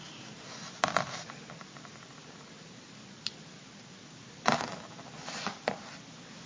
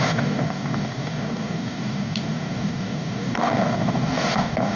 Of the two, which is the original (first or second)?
first